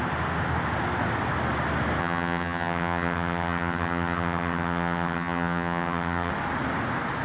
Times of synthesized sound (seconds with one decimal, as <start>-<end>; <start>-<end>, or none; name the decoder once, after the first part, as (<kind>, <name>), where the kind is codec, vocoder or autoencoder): 2.0-6.3 (vocoder, HiFi-GAN)